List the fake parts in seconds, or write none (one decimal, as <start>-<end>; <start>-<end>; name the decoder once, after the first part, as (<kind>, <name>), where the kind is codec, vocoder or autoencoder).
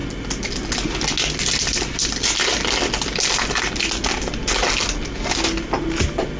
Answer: none